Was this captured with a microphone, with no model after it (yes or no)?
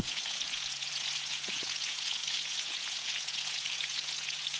no